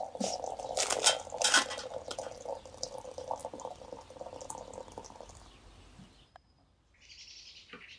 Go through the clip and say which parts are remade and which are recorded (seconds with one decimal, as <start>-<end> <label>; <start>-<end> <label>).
0.0-8.0 recorded